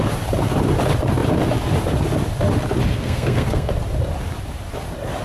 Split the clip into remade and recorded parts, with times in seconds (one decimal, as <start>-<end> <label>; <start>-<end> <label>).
0.0-2.9 recorded; 2.9-3.7 remade; 3.7-5.2 recorded

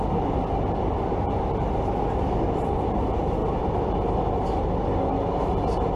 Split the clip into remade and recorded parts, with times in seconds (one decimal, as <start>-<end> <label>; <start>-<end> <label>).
0.0-3.4 recorded; 3.4-3.9 remade; 3.9-6.0 recorded

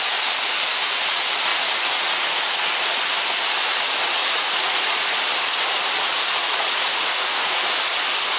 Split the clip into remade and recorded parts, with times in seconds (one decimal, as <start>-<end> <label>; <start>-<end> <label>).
0.0-1.5 recorded; 1.5-3.0 remade; 3.0-4.2 recorded; 4.2-5.2 remade; 5.2-6.4 recorded; 6.4-7.6 remade; 7.6-8.4 recorded

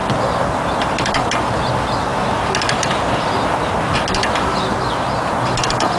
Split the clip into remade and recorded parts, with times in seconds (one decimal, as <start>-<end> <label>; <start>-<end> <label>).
0.0-6.0 recorded

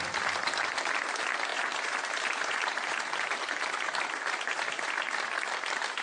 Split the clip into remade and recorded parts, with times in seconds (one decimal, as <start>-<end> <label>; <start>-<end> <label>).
0.0-1.5 recorded; 1.5-4.9 remade; 4.9-6.0 recorded

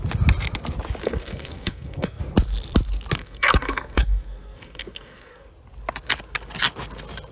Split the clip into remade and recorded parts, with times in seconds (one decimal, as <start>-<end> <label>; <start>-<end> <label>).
0.0-1.0 recorded; 1.0-2.2 remade; 2.2-3.2 recorded; 3.2-5.5 remade; 5.5-7.3 recorded

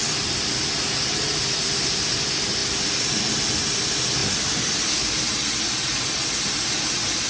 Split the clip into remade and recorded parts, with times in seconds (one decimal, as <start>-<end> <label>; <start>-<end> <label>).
0.0-0.6 remade; 0.6-4.2 recorded; 4.2-5.2 remade; 5.2-7.3 recorded

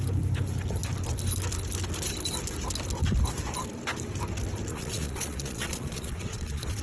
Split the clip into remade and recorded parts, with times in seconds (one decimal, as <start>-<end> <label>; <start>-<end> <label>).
0.0-4.7 recorded; 4.7-6.8 remade